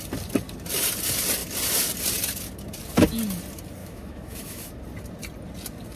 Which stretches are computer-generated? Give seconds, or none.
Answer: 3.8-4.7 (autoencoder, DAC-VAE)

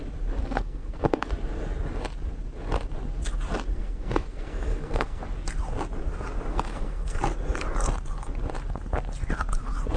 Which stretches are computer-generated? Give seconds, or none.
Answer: 0.4-1.3 (codec, SNAC); 3.7-5.2; 6.5-7.2

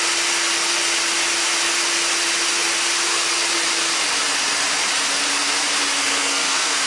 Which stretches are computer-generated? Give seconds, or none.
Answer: 6.0-6.9 (codec, SNAC)

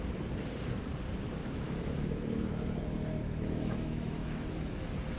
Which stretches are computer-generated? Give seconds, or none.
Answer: 1.4-2.1 (autoencoder, DAC-VAE); 3.1-4.8

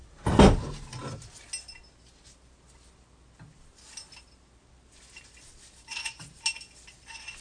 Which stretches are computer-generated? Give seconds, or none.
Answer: none

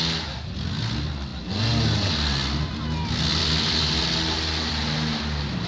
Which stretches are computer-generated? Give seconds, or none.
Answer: none

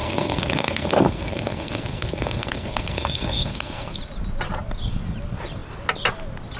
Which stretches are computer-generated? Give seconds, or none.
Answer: 0.0-4.0 (codec, SNAC)

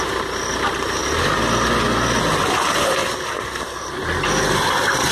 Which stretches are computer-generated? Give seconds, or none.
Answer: none